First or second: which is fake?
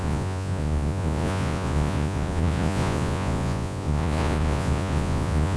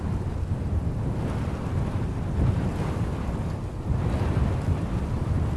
first